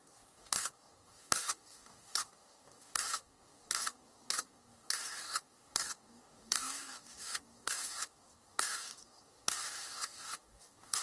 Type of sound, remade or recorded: remade